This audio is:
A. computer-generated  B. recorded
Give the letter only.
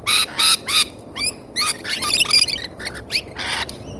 B